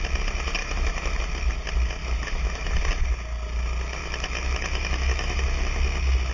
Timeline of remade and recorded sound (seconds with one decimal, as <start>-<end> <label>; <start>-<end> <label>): 0.0-0.6 recorded; 0.6-1.2 remade; 1.2-2.0 recorded; 2.0-2.7 remade; 2.7-4.0 recorded; 4.0-5.7 remade; 5.7-6.3 recorded